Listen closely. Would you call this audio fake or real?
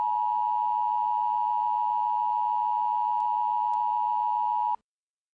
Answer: real